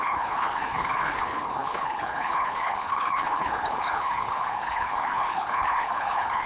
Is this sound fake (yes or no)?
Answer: yes